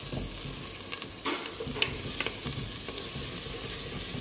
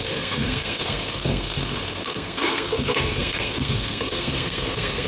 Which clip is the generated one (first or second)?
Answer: second